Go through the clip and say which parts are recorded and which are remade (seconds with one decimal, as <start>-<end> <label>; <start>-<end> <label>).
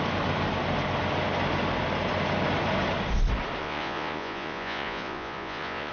0.0-3.6 recorded; 3.6-5.9 remade